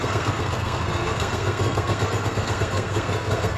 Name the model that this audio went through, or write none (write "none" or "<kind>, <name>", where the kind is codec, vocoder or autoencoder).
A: codec, SNAC